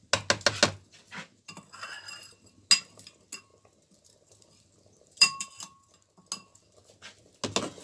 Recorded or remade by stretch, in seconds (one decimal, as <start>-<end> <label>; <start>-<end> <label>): 0.0-3.5 recorded; 3.5-5.5 remade; 5.5-7.8 recorded